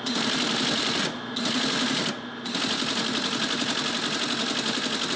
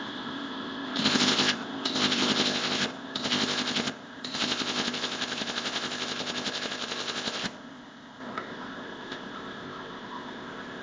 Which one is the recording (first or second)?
first